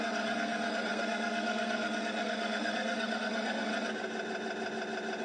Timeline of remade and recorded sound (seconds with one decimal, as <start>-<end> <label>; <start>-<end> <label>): 0.0-3.7 remade; 3.7-5.2 recorded